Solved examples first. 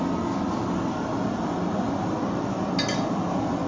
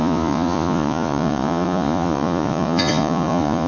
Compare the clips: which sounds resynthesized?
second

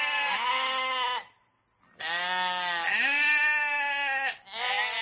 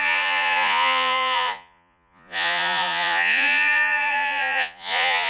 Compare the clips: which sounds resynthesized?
second